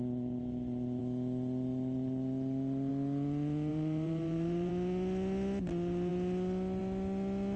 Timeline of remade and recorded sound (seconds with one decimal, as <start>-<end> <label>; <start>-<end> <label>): 0.0-3.7 recorded; 3.7-4.7 remade; 4.7-7.6 recorded